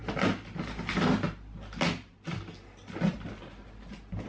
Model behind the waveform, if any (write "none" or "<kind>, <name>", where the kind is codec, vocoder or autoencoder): none